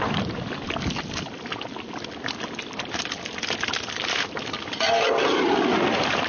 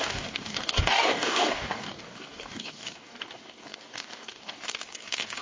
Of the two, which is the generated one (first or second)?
second